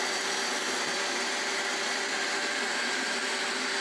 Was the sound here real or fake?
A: real